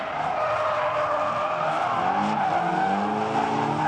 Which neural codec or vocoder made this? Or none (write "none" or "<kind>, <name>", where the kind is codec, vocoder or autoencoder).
none